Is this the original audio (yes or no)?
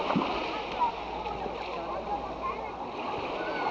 yes